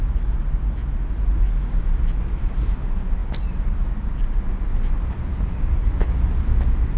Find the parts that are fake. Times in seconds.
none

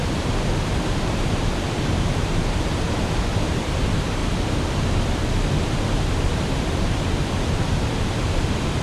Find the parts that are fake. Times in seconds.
0.9-2.7 (vocoder, BigVGAN v2); 3.2-4.2; 6.1-8.8

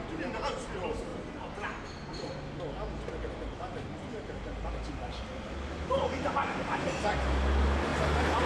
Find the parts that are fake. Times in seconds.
none

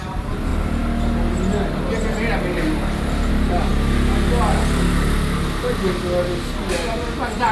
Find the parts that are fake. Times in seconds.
0.0-0.5 (vocoder, BigVGAN v2); 3.3-3.7

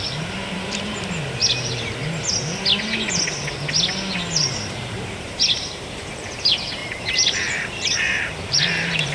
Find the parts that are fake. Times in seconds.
0.0-2.0 (vocoder, BigVGAN v2); 4.5-9.1

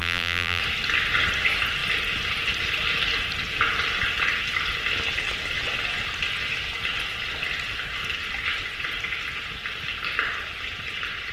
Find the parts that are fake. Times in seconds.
0.0-0.6 (vocoder, BigVGAN v2)

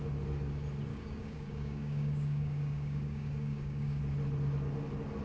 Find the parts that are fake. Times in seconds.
0.9-4.0 (codec, DAC)

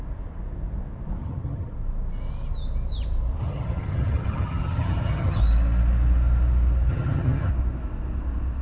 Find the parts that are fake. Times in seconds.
1.2-1.7 (vocoder, HiFi-GAN); 3.4-5.4; 6.9-7.5